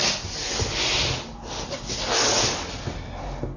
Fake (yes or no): no